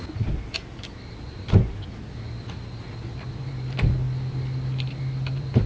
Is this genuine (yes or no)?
no